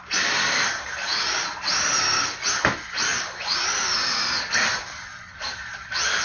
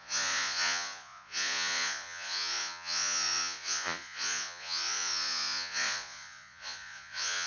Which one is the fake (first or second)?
second